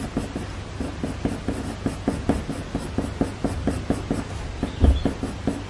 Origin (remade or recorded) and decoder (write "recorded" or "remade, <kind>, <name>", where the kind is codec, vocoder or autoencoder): recorded